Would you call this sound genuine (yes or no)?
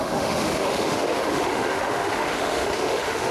no